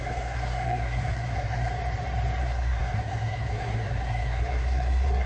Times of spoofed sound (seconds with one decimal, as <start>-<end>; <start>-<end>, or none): 0.0-1.7; 2.4-5.3